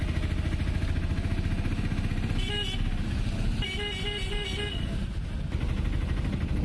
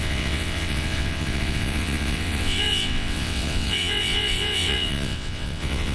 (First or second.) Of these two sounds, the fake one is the second